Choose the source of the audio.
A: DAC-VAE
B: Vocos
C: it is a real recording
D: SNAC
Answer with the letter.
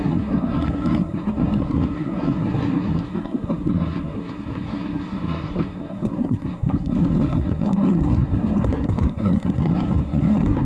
D